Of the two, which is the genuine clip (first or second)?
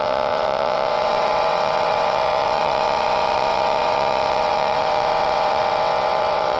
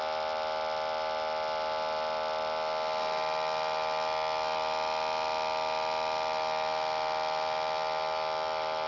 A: second